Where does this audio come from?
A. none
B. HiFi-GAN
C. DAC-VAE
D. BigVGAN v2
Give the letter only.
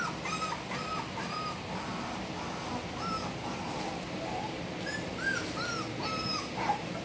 A